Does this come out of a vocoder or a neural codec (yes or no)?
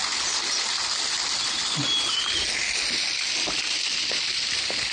no